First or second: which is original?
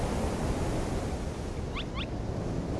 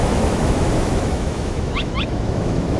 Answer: first